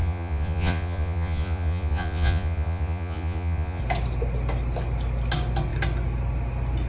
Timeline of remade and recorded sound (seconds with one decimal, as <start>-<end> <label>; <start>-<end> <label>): 0.0-3.8 remade; 3.8-6.9 recorded

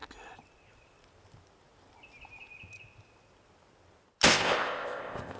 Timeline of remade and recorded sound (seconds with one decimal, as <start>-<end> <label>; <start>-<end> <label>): 0.0-4.3 recorded; 4.3-5.4 remade

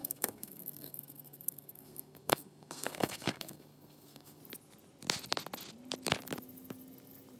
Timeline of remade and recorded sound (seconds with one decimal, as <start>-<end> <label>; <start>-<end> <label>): 0.0-4.4 remade; 4.4-7.4 recorded

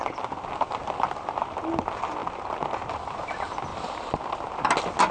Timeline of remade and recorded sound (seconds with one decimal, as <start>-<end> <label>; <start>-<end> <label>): 0.0-5.1 recorded

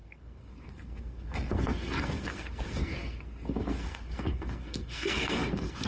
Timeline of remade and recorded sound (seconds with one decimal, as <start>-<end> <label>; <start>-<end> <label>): 0.0-5.9 remade